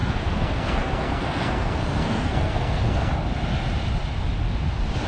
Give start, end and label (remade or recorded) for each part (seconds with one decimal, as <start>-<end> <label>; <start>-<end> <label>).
0.0-3.1 remade; 3.1-5.1 recorded